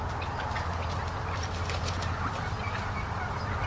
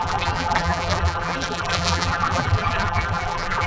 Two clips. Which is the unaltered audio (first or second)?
first